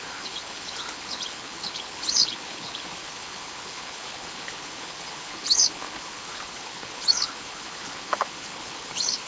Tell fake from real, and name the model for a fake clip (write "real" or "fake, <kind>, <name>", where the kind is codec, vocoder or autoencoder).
fake, codec, HILCodec